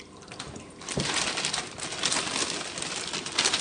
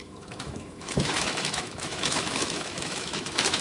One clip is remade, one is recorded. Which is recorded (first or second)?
first